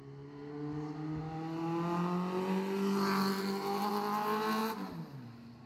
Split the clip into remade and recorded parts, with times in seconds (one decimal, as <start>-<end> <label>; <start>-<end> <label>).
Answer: 0.0-4.6 recorded; 4.6-5.7 remade